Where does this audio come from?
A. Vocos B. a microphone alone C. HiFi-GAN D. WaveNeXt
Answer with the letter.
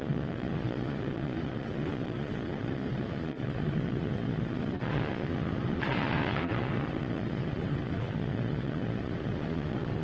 A